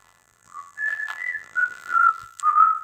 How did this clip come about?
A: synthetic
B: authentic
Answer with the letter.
A